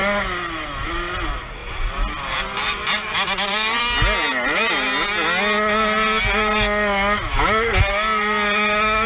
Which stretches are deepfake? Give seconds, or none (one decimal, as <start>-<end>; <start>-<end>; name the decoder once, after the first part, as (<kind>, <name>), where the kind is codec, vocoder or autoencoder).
1.6-3.8 (vocoder, BigVGAN v2)